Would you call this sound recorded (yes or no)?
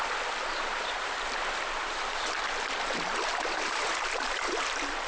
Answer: yes